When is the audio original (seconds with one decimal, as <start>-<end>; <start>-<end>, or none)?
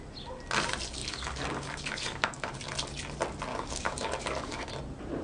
0.0-1.0; 2.6-3.5; 4.7-5.2